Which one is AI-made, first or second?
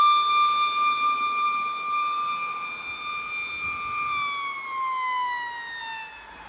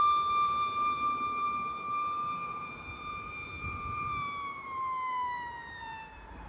second